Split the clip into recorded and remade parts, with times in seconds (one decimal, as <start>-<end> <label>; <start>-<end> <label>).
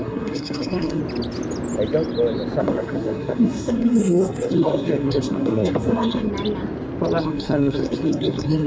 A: 0.0-1.0 remade; 1.0-2.6 recorded; 2.6-6.3 remade; 6.3-7.2 recorded; 7.2-8.7 remade